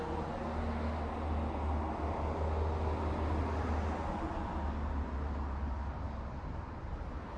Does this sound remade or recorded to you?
recorded